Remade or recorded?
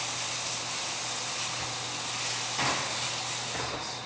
recorded